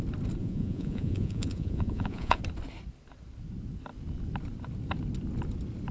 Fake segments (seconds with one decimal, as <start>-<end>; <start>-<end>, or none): 0.4-2.4

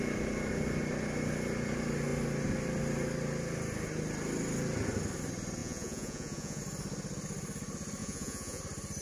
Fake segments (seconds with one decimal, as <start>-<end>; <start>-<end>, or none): 5.6-6.6; 8.0-8.6

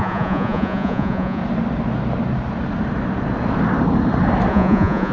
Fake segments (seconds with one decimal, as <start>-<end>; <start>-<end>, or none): 0.0-1.4; 4.5-5.1

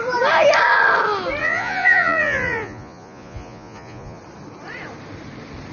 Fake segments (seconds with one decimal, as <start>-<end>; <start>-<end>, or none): 1.4-4.2

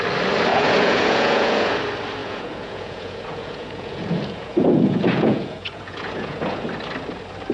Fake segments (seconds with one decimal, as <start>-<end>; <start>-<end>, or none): 0.5-1.8; 2.2-6.7

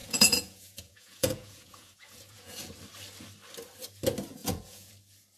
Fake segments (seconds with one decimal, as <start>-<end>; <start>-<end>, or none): 0.0-2.7; 4.4-4.9

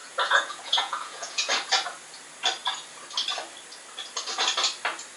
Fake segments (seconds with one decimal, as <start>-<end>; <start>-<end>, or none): 0.0-1.5

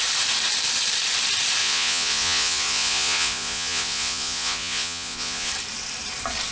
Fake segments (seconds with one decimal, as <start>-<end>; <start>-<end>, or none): 1.6-5.5